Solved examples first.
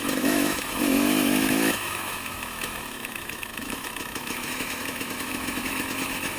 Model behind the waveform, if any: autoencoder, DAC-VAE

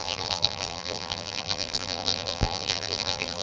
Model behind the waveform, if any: vocoder, BigVGAN v2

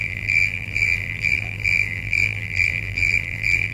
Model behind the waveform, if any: vocoder, BigVGAN v2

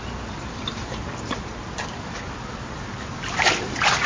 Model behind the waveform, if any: none